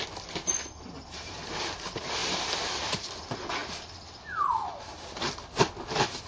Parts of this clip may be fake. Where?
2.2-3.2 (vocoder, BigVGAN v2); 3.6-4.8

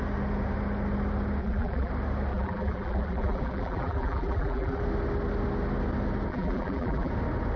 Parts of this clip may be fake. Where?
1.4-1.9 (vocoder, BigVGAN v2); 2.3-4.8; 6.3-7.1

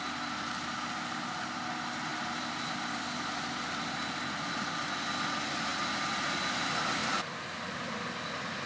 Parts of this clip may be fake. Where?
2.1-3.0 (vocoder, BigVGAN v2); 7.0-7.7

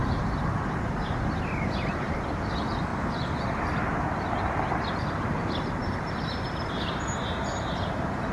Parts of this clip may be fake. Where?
0.0-2.9 (vocoder, BigVGAN v2); 4.9-5.8

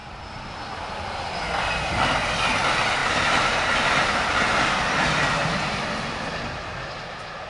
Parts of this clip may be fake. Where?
0.0-0.5 (vocoder, BigVGAN v2); 3.0-3.8; 5.4-5.9